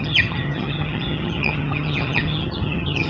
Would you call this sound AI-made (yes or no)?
yes